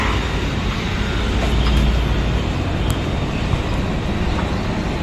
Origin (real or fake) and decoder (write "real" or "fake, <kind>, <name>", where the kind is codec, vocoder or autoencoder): real